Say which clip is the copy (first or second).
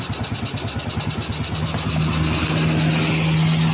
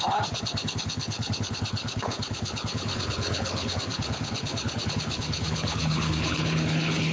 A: second